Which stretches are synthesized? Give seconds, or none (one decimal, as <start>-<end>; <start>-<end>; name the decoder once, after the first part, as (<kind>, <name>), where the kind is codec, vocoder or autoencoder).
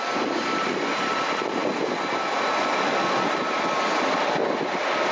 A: none